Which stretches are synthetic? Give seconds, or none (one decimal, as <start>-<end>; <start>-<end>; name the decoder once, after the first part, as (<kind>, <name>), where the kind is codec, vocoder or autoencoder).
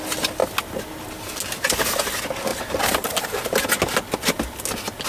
2.5-3.8 (vocoder, BigVGAN v2)